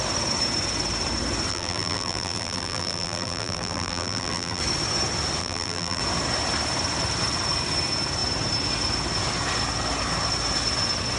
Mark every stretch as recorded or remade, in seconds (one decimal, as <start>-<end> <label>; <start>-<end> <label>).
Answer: 0.0-1.5 recorded; 1.5-4.6 remade; 4.6-5.4 recorded; 5.4-6.0 remade; 6.0-11.2 recorded